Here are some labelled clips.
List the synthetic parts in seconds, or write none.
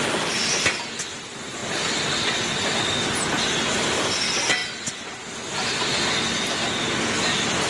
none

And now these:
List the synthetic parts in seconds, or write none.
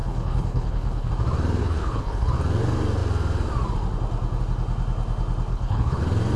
0.0-1.1 (codec, HILCodec); 1.6-2.3; 5.5-6.0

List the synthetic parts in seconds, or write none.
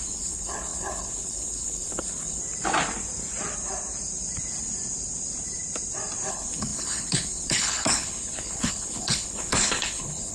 0.0-2.4 (codec, HILCodec); 6.3-10.3